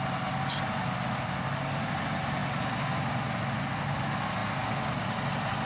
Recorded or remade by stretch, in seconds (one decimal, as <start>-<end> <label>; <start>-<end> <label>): 0.0-5.7 recorded